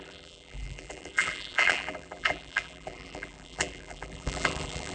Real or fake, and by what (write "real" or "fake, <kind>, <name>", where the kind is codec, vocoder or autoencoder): fake, vocoder, BigVGAN v2